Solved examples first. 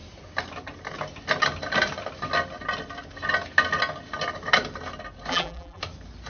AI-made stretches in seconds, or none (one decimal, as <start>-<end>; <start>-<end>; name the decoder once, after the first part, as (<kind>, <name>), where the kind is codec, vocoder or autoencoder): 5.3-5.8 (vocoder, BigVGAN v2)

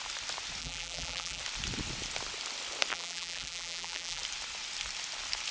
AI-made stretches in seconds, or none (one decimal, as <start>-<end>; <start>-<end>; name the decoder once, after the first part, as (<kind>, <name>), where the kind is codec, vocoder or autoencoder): 0.6-1.4 (vocoder, BigVGAN v2); 2.9-4.2

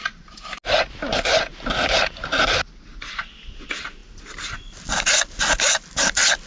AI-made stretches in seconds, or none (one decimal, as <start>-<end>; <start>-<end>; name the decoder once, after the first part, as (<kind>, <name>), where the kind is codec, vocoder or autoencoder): none

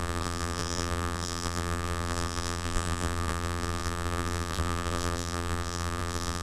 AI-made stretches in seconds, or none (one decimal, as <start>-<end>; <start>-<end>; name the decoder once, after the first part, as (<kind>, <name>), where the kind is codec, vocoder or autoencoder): 0.0-6.4 (vocoder, BigVGAN v2)

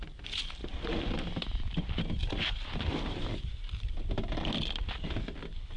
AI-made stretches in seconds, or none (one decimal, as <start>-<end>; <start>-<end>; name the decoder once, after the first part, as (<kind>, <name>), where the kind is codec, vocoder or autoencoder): 0.6-4.1 (vocoder, BigVGAN v2)

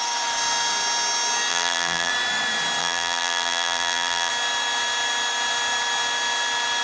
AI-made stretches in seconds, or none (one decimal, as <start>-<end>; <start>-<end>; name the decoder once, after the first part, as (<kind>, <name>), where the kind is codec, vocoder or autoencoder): 1.5-2.1 (vocoder, BigVGAN v2); 2.8-4.3

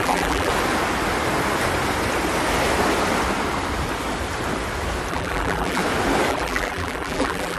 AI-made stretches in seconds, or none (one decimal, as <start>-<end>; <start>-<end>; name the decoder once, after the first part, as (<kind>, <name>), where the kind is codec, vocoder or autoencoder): 0.0-0.5 (vocoder, BigVGAN v2); 5.1-5.8; 6.3-7.6